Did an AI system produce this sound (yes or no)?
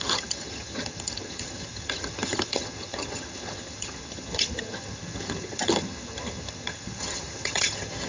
yes